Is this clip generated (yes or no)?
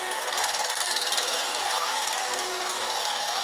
yes